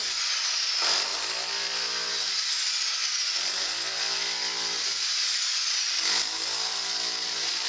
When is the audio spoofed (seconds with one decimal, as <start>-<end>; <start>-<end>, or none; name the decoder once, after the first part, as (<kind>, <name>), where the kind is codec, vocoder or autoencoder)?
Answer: none